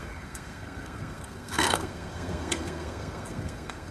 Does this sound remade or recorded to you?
remade